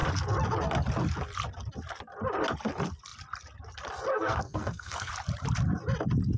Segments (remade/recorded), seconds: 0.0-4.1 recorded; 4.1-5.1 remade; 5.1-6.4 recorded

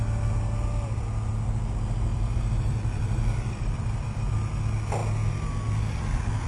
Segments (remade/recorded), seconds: 0.0-2.1 recorded; 2.1-3.9 remade; 3.9-6.5 recorded

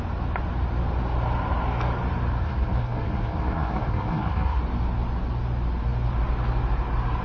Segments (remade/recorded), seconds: 0.0-2.4 recorded; 2.4-4.6 remade; 4.6-7.2 recorded

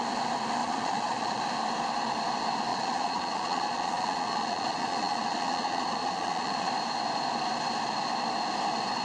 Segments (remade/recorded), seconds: 0.0-0.6 recorded; 0.6-1.4 remade; 1.4-2.7 recorded; 2.7-6.7 remade; 6.7-9.0 recorded